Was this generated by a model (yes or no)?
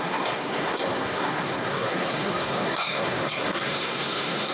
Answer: yes